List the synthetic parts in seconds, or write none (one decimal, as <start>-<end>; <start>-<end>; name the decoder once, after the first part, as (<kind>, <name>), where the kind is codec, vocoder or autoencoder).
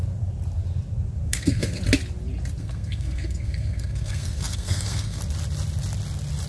1.3-1.8 (codec, SNAC); 2.6-5.2